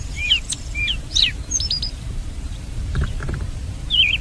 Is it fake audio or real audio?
fake